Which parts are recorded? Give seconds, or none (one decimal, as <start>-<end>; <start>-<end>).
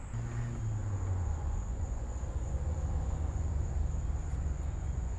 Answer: 0.0-0.8; 3.8-4.2